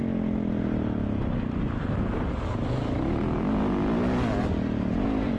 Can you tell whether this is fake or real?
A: real